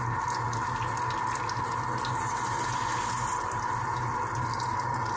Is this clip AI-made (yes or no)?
no